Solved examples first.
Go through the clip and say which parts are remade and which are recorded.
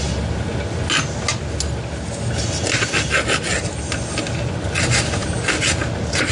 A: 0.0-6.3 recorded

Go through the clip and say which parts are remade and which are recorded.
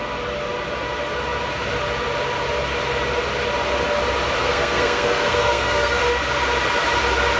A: 0.0-4.4 recorded; 4.4-6.0 remade; 6.0-7.4 recorded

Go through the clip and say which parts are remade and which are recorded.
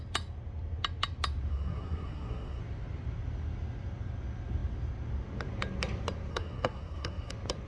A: 0.0-1.5 recorded; 1.5-2.6 remade; 2.6-6.3 recorded; 6.3-7.3 remade; 7.3-7.7 recorded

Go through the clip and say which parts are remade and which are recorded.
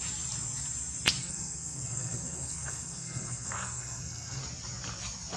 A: 0.0-1.2 recorded; 1.2-4.4 remade; 4.4-5.4 recorded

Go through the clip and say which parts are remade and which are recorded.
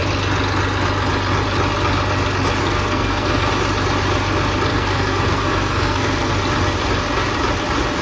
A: 0.0-2.6 recorded; 2.6-3.5 remade; 3.5-4.7 recorded; 4.7-6.3 remade; 6.3-8.0 recorded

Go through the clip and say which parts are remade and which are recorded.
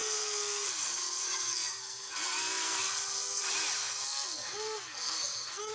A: 0.0-3.4 remade; 3.4-3.8 recorded; 3.8-5.7 remade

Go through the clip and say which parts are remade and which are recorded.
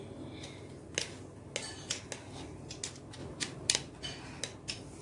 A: 0.0-5.0 recorded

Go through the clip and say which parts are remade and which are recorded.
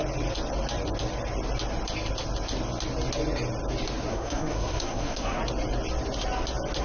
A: 0.0-4.1 recorded; 4.1-5.4 remade; 5.4-6.8 recorded